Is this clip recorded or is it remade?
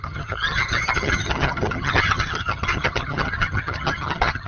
remade